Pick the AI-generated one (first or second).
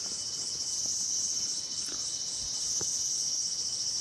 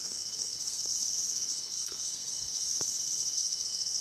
second